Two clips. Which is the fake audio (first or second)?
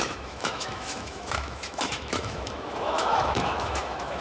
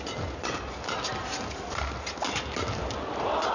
first